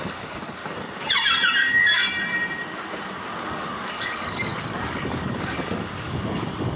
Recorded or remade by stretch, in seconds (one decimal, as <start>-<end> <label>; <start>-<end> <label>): 0.0-0.6 remade; 0.6-1.6 recorded; 1.6-2.0 remade; 2.0-3.4 recorded; 3.4-6.8 remade